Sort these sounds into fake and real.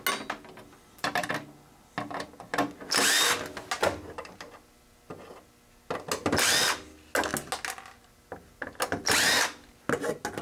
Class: real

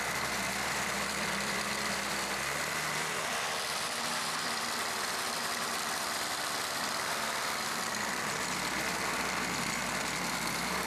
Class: fake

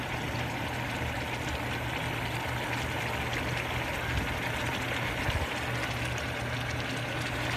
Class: real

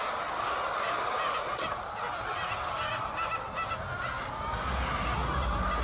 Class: real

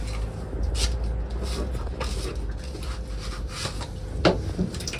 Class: real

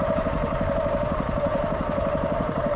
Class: fake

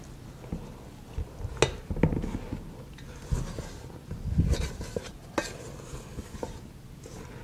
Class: real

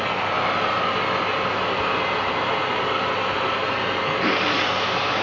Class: real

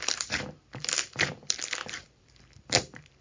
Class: fake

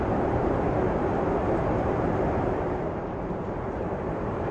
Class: fake